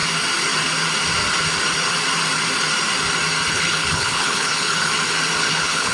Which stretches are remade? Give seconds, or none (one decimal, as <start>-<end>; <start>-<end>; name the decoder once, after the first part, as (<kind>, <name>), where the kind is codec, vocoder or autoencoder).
3.5-4.9 (codec, HILCodec); 5.4-5.9